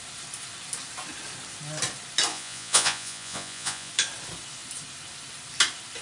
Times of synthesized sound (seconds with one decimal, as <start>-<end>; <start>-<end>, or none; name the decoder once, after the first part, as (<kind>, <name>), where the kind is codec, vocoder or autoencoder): 2.3-3.9 (vocoder, Vocos)